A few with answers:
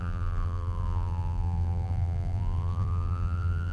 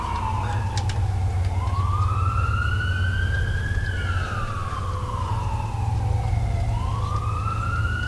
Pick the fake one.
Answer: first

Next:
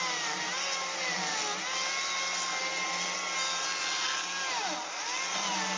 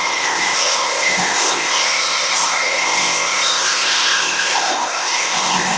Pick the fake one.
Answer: second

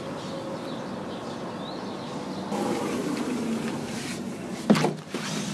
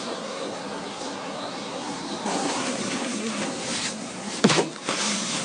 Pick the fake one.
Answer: second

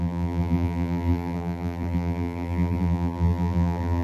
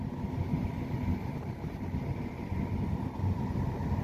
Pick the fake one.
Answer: first